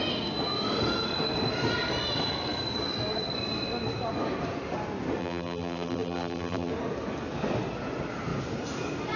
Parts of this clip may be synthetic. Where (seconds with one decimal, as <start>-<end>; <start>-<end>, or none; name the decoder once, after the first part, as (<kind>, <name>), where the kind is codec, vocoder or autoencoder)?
5.2-6.7 (vocoder, BigVGAN v2)